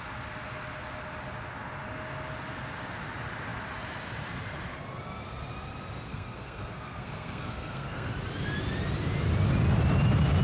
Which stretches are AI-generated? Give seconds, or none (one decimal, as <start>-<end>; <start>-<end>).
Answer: 6.1-8.1